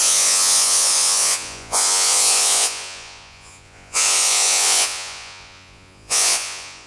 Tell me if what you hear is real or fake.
fake